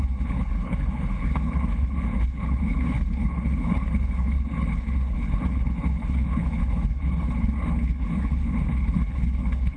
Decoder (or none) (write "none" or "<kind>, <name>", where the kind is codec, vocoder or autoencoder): codec, HILCodec